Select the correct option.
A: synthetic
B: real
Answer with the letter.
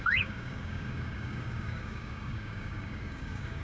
A